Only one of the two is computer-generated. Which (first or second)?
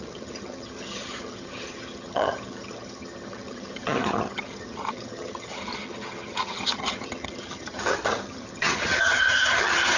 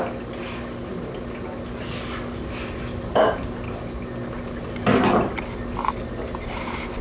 first